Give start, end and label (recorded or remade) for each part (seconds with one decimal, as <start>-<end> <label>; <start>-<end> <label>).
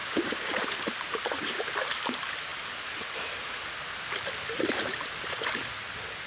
0.0-0.6 remade; 0.6-6.3 recorded